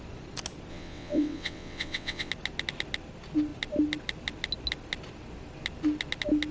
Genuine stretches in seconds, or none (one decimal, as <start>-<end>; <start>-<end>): 0.0-0.7; 2.3-6.5